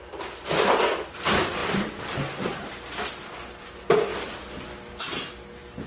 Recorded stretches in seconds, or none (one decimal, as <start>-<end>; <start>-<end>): 0.0-5.9